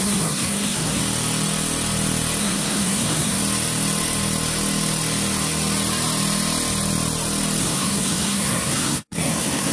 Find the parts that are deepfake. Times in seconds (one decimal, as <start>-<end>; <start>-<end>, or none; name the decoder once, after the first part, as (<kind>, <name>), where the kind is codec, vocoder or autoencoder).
0.0-1.0 (codec, SNAC); 2.4-3.4; 7.6-9.7

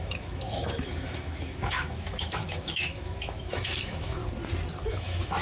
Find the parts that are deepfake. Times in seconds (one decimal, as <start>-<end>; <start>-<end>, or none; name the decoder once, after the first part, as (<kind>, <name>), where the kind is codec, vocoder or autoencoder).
0.0-4.2 (autoencoder, DAC-VAE); 4.9-5.4

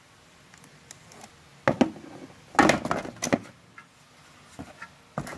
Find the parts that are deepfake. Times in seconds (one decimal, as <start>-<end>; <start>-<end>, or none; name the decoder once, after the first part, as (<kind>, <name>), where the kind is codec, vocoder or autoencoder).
none

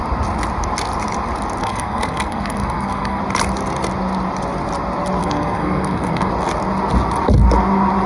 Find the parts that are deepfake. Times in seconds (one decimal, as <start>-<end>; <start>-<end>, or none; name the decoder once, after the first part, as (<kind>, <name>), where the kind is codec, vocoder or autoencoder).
1.6-3.2 (codec, SNAC); 5.2-6.3

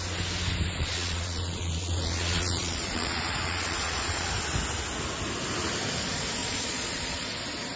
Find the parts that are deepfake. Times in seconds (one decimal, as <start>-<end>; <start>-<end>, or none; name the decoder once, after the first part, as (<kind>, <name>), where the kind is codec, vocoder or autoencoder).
0.8-4.3 (vocoder, Vocos); 6.4-7.3

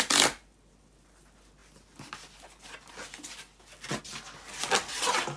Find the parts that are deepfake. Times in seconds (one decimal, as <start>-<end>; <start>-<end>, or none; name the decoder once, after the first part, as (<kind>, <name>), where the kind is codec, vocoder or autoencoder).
none